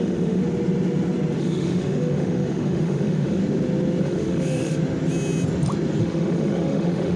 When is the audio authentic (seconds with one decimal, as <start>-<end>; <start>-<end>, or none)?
0.4-1.4; 3.4-4.0; 4.8-6.0